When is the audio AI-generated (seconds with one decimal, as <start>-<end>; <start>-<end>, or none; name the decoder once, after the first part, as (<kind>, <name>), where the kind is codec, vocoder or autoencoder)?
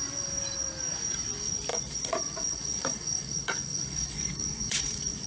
1.7-5.3 (vocoder, Vocos)